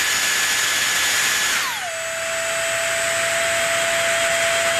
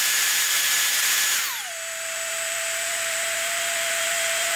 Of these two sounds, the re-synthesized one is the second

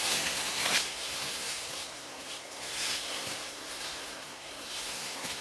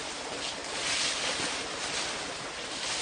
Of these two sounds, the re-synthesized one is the first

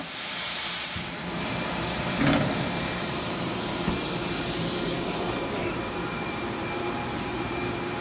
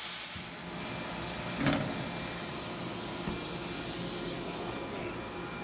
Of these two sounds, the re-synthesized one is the first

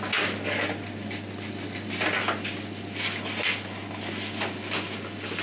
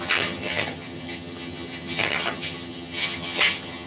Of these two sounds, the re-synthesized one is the second